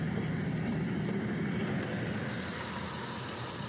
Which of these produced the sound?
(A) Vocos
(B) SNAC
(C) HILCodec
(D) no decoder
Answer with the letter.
D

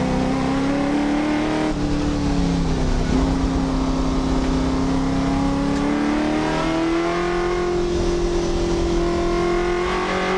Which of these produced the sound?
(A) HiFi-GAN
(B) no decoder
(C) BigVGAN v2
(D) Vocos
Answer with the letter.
B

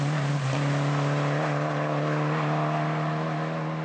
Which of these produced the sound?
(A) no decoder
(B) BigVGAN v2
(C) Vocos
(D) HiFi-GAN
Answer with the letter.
A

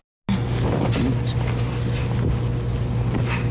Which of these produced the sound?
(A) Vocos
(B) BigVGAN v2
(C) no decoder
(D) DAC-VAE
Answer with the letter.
C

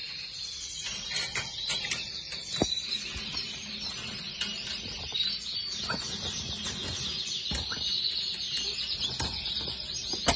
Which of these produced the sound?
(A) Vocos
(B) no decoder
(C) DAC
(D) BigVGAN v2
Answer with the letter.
B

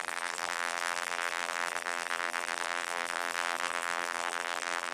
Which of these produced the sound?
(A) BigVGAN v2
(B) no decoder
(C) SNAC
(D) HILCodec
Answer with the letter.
A